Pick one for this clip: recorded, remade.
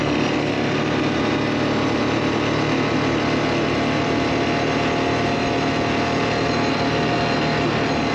recorded